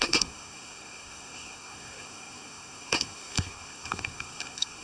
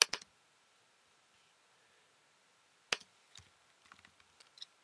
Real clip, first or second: second